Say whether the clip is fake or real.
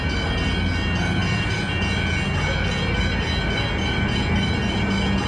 real